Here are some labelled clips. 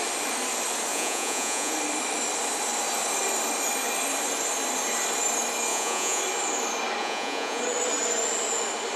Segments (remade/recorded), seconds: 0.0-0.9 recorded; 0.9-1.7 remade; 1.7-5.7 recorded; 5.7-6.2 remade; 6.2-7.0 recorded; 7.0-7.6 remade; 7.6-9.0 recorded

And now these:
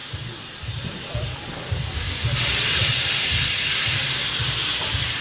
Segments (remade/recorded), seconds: 0.0-0.9 recorded; 0.9-5.2 remade